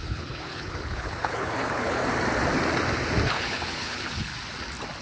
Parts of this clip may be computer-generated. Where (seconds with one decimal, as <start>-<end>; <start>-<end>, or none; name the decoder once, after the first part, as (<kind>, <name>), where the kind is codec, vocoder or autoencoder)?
0.0-2.0 (codec, HILCodec); 3.3-4.3